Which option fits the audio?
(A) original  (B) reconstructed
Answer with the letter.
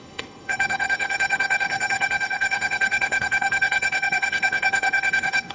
B